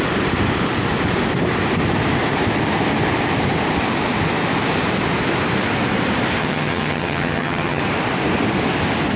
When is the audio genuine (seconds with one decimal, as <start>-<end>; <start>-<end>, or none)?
0.0-6.4; 7.8-9.2